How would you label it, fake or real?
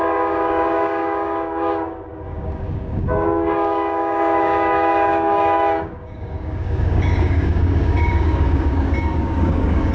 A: fake